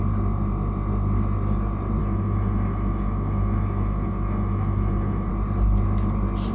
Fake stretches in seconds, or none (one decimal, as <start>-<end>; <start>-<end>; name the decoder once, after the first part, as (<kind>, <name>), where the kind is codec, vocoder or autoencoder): 2.0-5.3 (autoencoder, DAC-VAE)